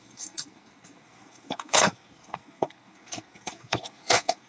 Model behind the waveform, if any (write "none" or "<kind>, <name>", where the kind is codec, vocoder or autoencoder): codec, SNAC